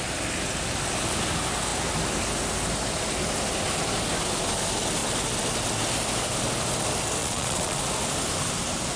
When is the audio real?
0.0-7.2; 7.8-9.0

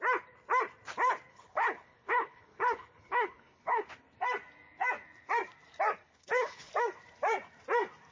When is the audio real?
0.0-1.3; 3.9-6.0; 6.7-8.1

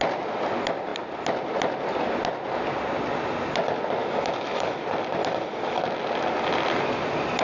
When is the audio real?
0.0-4.0; 4.8-5.2; 5.8-7.4

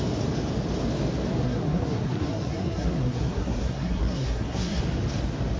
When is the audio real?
0.0-1.4; 4.8-5.6

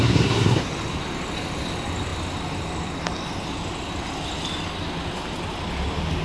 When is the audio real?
0.7-6.2

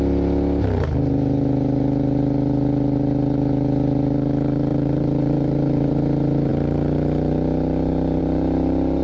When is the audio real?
0.0-4.7; 5.9-9.0

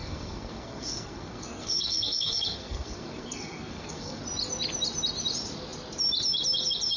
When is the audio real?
4.2-7.0

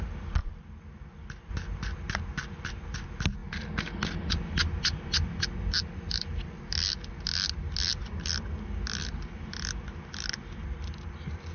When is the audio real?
0.0-11.5